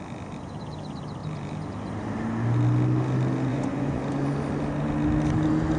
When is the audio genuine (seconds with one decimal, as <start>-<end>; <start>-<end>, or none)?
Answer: 0.0-3.5; 4.0-5.8